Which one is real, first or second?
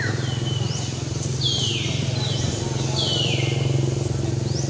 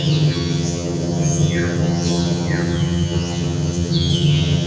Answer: first